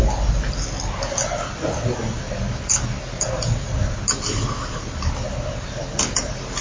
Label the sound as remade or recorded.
recorded